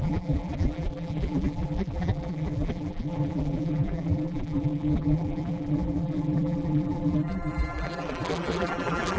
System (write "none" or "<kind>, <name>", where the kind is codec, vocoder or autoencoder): vocoder, BigVGAN v2